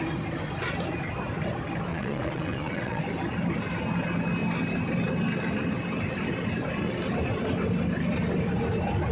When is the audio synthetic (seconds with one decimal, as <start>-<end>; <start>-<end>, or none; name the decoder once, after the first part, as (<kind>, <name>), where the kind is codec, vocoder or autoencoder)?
1.9-3.0 (vocoder, WaveNeXt)